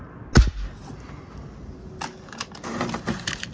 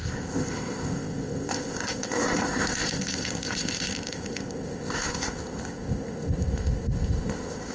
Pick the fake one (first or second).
second